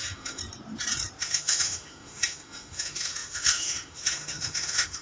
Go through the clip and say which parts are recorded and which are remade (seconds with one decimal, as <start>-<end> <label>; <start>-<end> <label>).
0.0-0.4 remade; 0.4-1.2 recorded; 1.2-5.0 remade